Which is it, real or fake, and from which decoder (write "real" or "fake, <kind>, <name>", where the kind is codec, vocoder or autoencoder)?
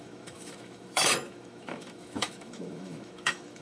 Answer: fake, autoencoder, DAC-VAE